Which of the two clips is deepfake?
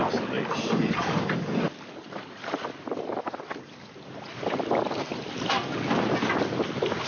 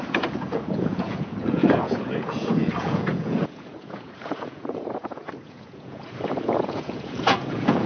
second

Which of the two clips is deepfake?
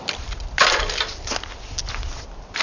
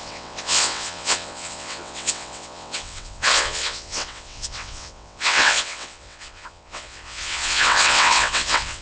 second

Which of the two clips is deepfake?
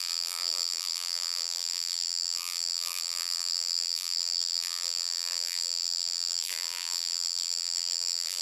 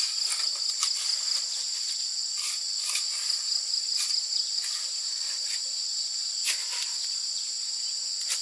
first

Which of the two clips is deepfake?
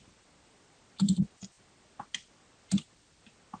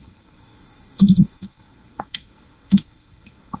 second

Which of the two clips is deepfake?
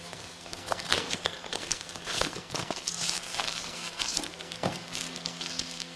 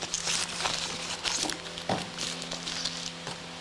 first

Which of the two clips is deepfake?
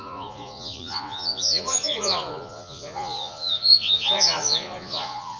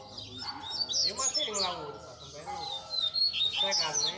first